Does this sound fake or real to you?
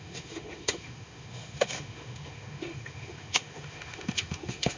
fake